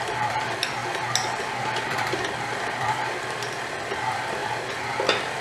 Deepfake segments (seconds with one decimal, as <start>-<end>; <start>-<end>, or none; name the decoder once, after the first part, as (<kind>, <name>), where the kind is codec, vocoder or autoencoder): 0.0-0.8 (vocoder, BigVGAN v2); 1.3-5.4